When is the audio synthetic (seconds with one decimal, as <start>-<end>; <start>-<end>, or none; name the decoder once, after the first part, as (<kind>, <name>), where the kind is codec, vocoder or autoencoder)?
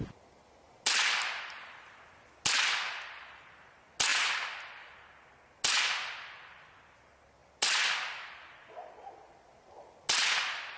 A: none